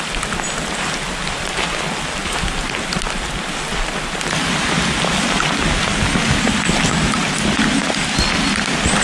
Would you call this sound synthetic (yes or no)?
no